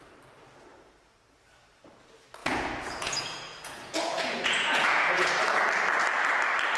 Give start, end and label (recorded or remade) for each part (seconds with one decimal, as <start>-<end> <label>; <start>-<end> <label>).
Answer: 0.0-2.4 recorded; 2.4-5.3 remade; 5.3-6.8 recorded